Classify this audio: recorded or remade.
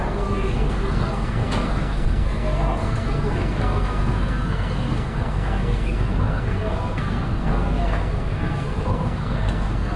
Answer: remade